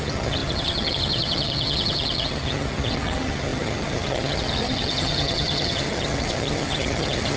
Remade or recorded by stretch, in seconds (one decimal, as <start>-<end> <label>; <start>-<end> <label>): 0.0-7.4 remade